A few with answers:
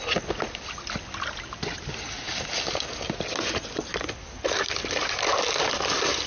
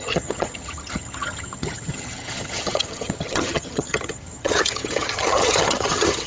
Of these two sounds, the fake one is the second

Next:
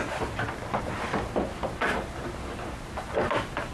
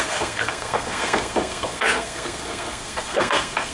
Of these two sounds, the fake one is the second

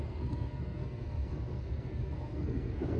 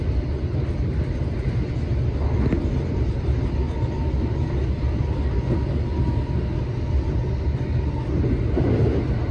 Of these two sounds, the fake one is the first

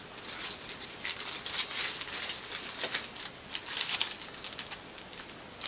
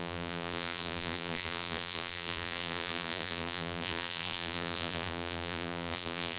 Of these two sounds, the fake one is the second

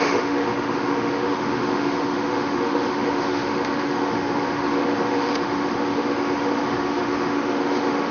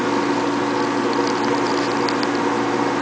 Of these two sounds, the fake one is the first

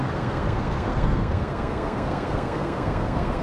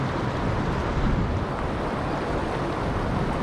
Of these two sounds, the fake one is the first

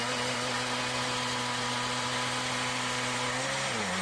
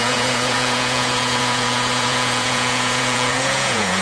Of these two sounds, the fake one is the second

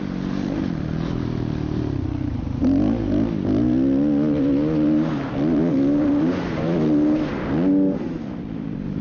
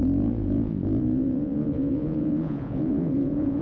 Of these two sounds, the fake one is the second